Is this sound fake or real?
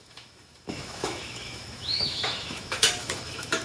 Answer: fake